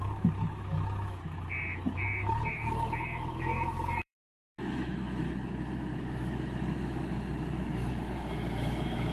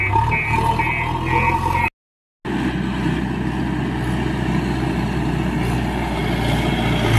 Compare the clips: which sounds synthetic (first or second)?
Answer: first